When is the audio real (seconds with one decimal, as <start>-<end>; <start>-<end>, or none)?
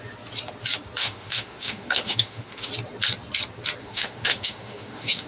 0.0-1.0; 2.7-3.8